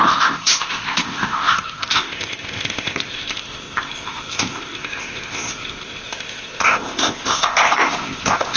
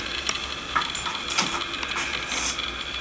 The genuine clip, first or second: second